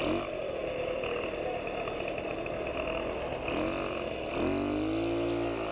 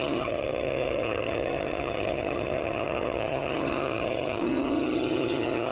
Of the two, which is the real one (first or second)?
first